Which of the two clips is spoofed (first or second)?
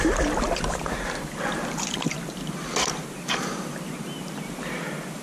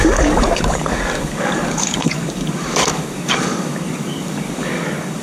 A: second